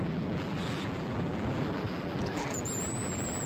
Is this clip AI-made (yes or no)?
yes